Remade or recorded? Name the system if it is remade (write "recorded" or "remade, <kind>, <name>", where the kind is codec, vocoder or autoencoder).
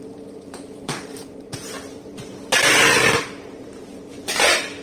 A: remade, vocoder, BigVGAN v2